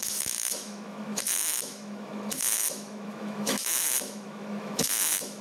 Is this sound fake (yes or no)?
yes